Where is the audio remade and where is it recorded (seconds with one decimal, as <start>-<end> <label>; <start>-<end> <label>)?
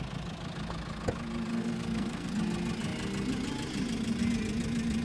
0.0-1.5 recorded; 1.5-2.3 remade; 2.3-5.0 recorded